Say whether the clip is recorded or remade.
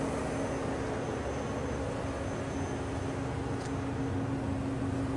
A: recorded